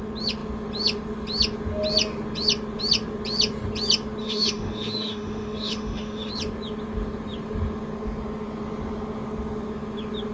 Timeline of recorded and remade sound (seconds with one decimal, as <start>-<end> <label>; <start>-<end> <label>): 0.0-4.2 recorded; 4.2-6.3 remade; 6.3-10.3 recorded